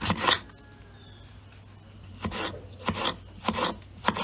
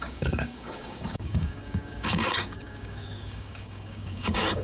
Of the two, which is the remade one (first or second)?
second